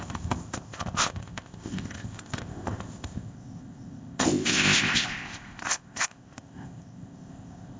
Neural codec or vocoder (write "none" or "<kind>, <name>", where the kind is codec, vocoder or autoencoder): codec, ZipCodec